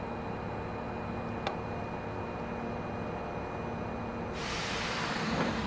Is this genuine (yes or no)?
yes